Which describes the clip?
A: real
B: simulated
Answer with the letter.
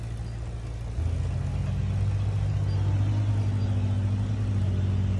A